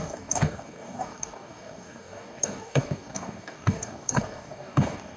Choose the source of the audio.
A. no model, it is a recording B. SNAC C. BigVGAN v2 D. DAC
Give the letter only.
D